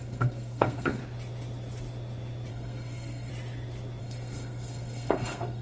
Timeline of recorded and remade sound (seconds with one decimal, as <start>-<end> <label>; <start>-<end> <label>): 0.0-1.0 remade; 1.0-2.5 recorded; 2.5-3.3 remade; 3.3-4.0 recorded; 4.0-5.6 remade